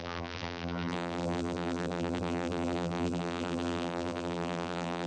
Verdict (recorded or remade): remade